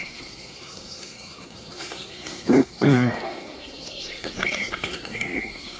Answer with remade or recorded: remade